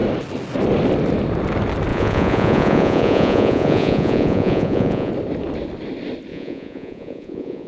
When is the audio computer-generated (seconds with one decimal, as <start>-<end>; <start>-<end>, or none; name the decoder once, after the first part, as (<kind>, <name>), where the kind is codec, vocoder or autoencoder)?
1.9-5.1 (vocoder, Vocos); 6.3-7.7